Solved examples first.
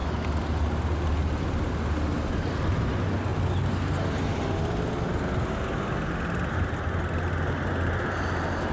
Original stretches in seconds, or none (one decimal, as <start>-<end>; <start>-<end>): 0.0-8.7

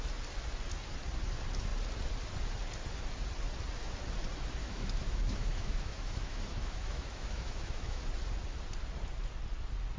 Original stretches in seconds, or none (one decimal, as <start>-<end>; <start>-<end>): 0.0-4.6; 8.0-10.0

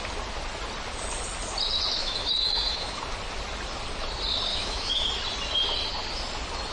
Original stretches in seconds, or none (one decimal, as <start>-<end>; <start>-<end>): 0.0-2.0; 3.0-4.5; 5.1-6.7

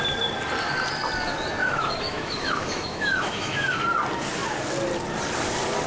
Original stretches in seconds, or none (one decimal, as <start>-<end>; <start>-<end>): 0.0-1.6; 3.8-5.9